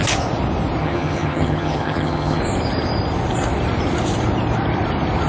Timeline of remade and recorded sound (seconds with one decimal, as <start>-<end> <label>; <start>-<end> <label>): 0.0-0.8 recorded; 0.8-2.4 remade; 2.4-5.3 recorded